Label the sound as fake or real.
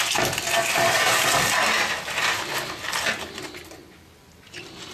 real